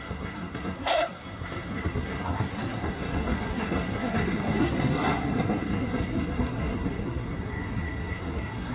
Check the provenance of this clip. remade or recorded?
remade